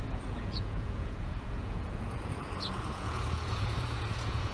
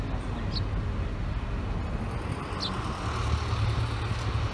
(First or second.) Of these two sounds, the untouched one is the second